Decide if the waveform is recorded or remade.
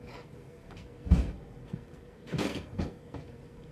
remade